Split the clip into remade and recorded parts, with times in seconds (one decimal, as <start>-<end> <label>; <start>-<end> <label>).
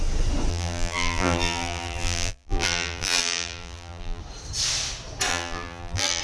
0.0-0.5 recorded; 0.5-4.2 remade; 4.2-5.3 recorded; 5.3-6.2 remade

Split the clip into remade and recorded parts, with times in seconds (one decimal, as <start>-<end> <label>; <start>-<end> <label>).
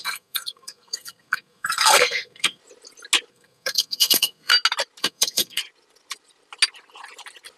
0.0-2.6 remade; 2.6-3.3 recorded; 3.3-4.5 remade; 4.5-5.0 recorded; 5.0-5.6 remade; 5.6-7.6 recorded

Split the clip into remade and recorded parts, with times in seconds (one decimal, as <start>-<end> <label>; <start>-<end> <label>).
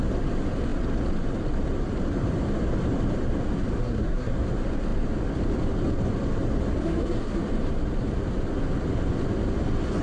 0.0-3.8 recorded; 3.8-4.3 remade; 4.3-6.8 recorded; 6.8-7.4 remade; 7.4-10.0 recorded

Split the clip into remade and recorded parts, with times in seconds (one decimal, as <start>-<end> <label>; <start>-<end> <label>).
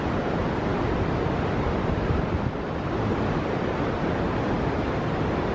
0.0-5.5 recorded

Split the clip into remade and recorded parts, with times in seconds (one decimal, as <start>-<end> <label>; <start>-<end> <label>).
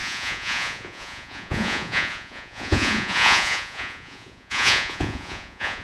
0.0-5.8 remade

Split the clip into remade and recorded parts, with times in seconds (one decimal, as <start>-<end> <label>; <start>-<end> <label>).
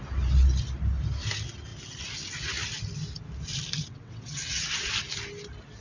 0.0-3.8 recorded; 3.8-4.9 remade; 4.9-5.8 recorded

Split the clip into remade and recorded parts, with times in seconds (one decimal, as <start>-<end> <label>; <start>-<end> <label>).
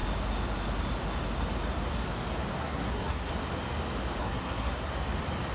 0.0-2.6 recorded; 2.6-3.3 remade; 3.3-4.2 recorded; 4.2-4.9 remade; 4.9-5.5 recorded